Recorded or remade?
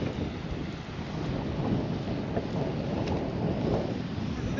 recorded